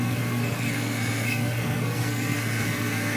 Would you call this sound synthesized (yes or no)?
yes